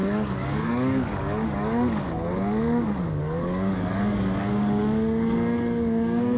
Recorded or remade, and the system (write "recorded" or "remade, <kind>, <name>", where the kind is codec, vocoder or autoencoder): remade, codec, DAC